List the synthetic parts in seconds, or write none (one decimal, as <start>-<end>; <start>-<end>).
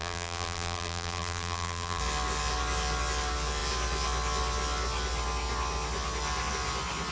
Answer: 0.0-2.0